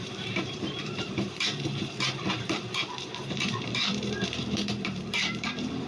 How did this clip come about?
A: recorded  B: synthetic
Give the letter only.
B